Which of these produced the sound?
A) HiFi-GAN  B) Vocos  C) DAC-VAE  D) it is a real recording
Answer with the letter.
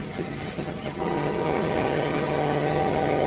A